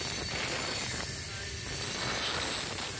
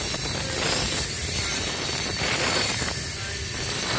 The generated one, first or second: second